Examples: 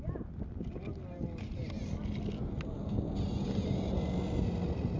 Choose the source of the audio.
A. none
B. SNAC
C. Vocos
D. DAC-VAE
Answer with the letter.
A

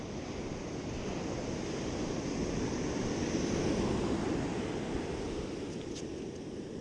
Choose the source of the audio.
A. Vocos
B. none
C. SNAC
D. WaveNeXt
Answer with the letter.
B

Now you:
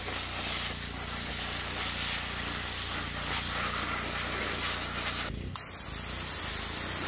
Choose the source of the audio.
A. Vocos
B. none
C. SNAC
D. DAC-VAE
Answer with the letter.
B